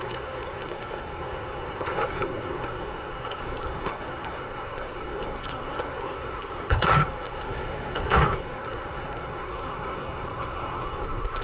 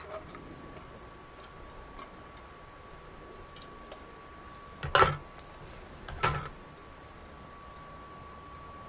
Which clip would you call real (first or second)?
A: second